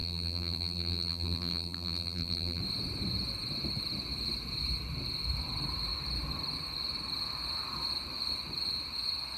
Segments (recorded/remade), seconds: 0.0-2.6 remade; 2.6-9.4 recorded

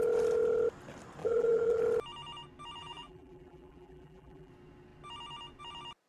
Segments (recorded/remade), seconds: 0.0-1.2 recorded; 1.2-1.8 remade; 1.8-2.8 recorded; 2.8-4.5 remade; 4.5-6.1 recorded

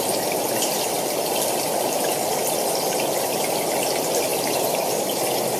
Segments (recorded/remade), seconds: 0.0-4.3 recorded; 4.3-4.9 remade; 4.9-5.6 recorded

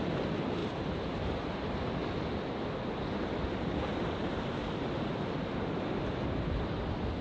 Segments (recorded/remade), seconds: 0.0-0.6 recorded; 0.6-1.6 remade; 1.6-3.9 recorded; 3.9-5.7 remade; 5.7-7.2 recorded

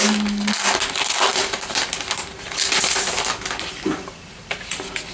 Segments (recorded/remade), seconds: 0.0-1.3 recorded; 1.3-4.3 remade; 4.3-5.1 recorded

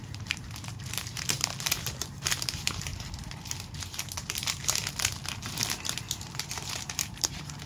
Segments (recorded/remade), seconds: 0.0-2.9 remade; 2.9-6.0 recorded; 6.0-7.7 remade

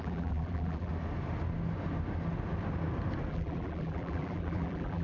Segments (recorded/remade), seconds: 0.0-0.9 remade; 0.9-3.3 recorded; 3.3-5.0 remade

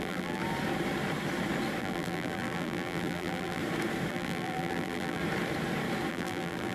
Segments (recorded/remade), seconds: 0.0-0.4 remade; 0.4-1.8 recorded; 1.8-3.6 remade; 3.6-4.1 recorded; 4.1-5.2 remade; 5.2-6.1 recorded; 6.1-6.7 remade